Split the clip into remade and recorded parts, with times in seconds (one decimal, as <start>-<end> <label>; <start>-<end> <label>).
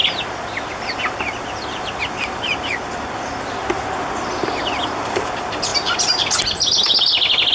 0.0-7.5 recorded